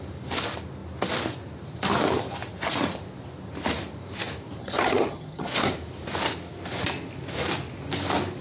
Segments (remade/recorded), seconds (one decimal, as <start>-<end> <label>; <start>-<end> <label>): 0.0-4.6 recorded; 4.6-5.7 remade; 5.7-8.4 recorded